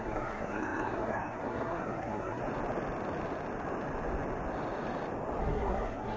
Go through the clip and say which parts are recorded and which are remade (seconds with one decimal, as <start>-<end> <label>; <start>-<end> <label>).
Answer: 0.0-2.4 remade; 2.4-5.4 recorded; 5.4-6.2 remade